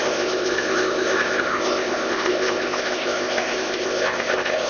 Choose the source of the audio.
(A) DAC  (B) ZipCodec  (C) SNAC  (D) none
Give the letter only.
B